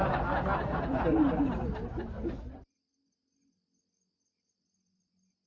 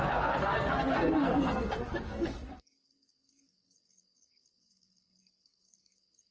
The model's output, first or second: second